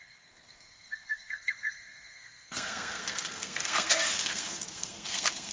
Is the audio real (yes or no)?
no